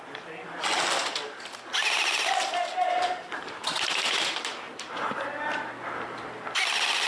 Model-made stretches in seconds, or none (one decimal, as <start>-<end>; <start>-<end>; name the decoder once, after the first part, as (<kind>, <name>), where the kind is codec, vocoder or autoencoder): 3.6-5.3 (vocoder, BigVGAN v2)